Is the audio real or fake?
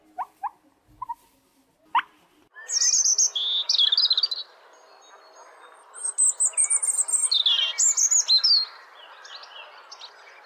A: real